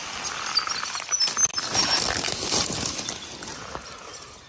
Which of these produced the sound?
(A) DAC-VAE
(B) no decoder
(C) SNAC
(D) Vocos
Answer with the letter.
B